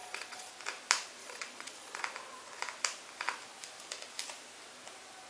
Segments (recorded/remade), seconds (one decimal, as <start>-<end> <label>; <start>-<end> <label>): 0.0-0.5 remade; 0.5-1.2 recorded; 1.2-2.0 remade; 2.0-5.3 recorded